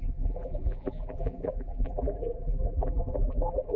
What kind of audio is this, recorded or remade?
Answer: remade